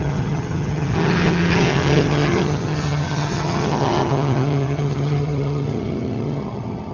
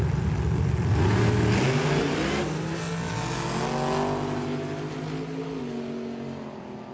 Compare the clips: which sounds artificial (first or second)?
first